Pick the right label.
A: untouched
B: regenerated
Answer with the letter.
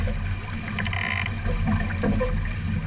A